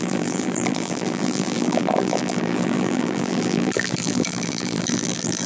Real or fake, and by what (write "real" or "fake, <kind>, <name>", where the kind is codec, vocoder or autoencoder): fake, vocoder, BigVGAN v2